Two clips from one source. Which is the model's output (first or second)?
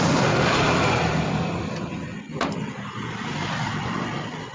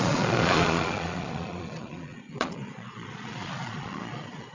second